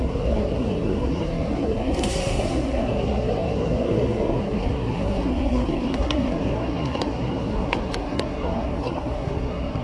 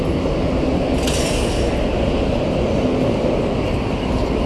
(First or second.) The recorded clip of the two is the second